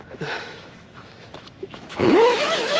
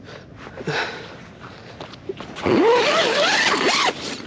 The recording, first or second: second